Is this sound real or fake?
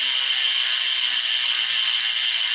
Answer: real